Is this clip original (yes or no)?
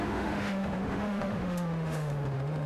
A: no